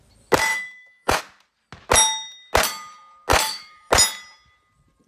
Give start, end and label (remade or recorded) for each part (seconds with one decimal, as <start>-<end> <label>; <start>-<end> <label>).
0.0-0.5 recorded; 0.5-1.2 remade; 1.2-3.3 recorded; 3.3-3.9 remade; 3.9-5.1 recorded